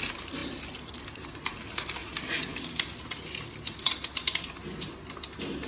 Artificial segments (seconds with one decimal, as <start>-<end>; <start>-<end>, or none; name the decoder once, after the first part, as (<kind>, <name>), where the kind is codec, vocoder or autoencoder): none